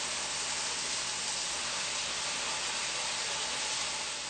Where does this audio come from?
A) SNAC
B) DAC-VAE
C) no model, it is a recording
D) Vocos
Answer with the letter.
C